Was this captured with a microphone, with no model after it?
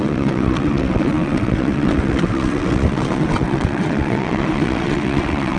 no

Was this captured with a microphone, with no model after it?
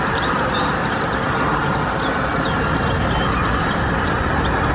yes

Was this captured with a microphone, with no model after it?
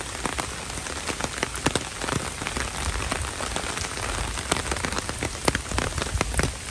yes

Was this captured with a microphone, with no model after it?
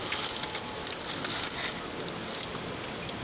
yes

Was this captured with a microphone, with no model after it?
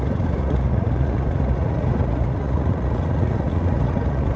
no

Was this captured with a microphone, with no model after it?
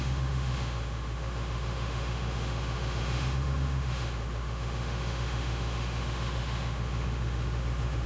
no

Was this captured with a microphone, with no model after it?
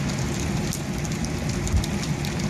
yes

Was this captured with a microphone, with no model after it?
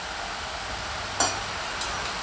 yes